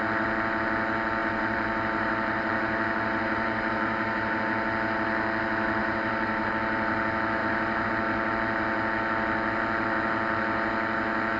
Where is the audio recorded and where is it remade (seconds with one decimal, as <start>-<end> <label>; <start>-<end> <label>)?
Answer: 0.0-1.2 recorded; 1.2-4.4 remade; 4.4-5.8 recorded; 5.8-6.5 remade; 6.5-7.4 recorded; 7.4-7.9 remade; 7.9-11.4 recorded